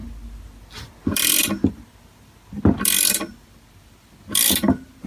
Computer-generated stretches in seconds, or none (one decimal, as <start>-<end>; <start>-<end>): none